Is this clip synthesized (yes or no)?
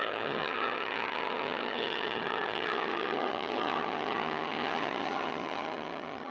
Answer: yes